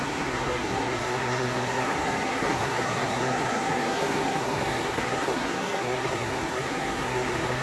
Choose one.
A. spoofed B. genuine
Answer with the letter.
A